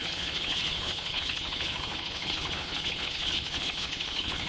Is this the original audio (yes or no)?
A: no